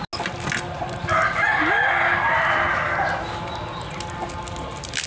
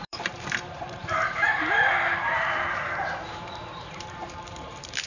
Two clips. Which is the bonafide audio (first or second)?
first